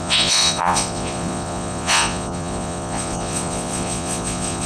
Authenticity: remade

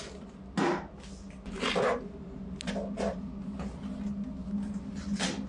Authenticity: recorded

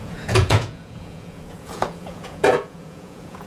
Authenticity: remade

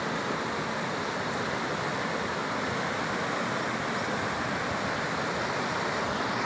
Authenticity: recorded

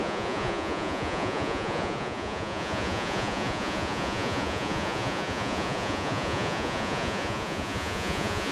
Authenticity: remade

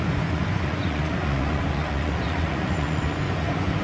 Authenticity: remade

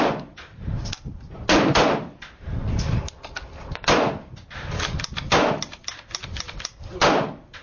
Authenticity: recorded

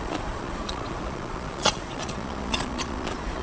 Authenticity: remade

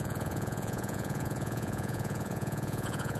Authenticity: remade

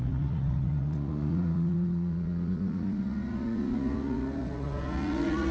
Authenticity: remade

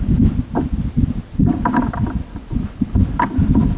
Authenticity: recorded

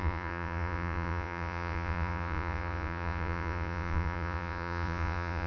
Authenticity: remade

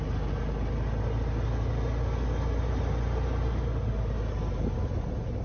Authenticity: recorded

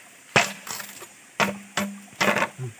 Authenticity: recorded